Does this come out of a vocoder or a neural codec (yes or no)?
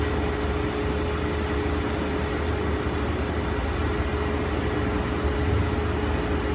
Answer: no